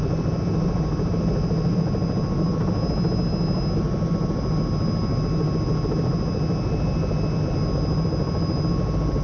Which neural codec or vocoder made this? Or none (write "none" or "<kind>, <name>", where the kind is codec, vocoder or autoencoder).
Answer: none